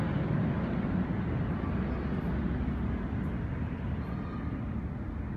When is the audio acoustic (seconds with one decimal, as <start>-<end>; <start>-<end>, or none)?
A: 0.0-0.4; 1.3-3.5; 4.0-5.4